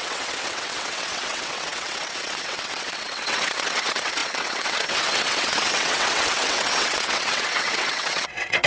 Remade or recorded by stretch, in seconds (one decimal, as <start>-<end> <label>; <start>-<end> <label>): 0.0-8.7 remade